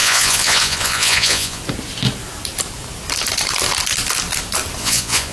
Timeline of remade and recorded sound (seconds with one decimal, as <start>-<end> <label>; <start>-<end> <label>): 0.0-1.6 remade; 1.6-4.8 recorded; 4.8-5.3 remade